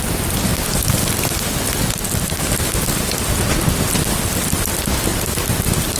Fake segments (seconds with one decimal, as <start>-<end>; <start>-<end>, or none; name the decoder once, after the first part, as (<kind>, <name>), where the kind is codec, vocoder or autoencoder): 5.1-6.0 (vocoder, BigVGAN v2)